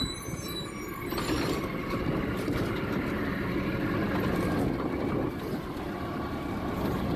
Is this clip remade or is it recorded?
recorded